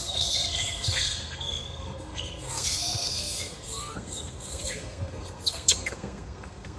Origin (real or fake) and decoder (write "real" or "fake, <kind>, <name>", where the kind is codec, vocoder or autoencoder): fake, codec, SNAC